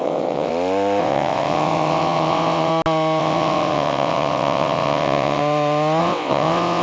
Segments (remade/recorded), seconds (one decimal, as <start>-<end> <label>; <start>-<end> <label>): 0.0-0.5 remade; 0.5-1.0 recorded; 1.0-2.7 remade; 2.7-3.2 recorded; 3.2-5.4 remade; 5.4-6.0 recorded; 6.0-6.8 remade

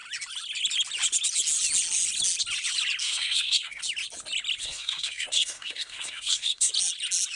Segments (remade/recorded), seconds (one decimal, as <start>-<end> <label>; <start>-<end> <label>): 0.0-3.0 recorded; 3.0-3.8 remade; 3.8-4.6 recorded; 4.6-6.7 remade; 6.7-7.4 recorded

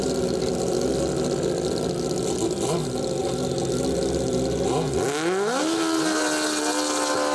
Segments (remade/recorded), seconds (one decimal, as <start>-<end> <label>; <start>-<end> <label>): 0.0-7.3 recorded

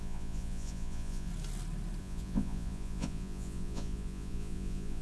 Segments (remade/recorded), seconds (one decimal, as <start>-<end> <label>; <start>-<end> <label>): 0.0-1.3 remade; 1.3-2.0 recorded; 2.0-5.0 remade

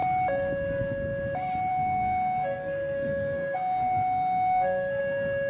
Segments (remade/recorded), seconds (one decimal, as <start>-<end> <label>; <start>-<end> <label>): 0.0-1.7 recorded; 1.7-5.0 remade; 5.0-5.5 recorded